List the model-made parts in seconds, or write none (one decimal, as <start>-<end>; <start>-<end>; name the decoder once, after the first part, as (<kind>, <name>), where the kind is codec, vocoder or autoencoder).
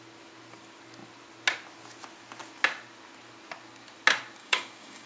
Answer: 4.4-5.1 (codec, DAC)